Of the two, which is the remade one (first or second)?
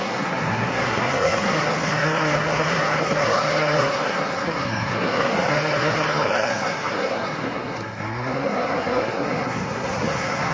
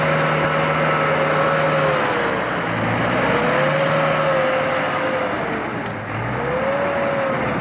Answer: first